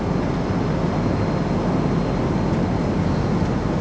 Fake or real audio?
real